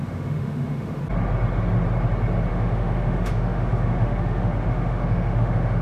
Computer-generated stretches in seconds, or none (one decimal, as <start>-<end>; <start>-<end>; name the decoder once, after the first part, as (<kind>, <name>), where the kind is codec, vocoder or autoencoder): 0.0-1.0 (autoencoder, DAC-VAE); 2.5-5.8